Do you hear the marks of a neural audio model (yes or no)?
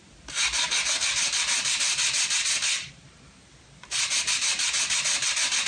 no